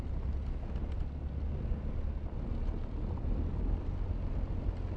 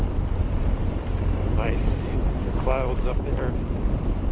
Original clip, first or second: first